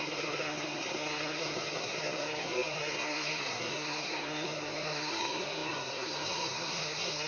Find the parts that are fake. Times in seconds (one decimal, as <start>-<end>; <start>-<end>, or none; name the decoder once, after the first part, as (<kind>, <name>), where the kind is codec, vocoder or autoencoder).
0.0-7.3 (codec, SNAC)